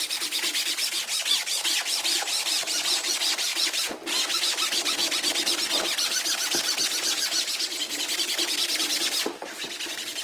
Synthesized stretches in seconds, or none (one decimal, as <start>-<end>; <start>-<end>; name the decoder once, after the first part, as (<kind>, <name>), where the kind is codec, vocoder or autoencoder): none